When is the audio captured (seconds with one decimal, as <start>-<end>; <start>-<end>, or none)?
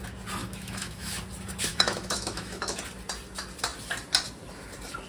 0.0-0.4; 1.1-1.7; 2.8-5.1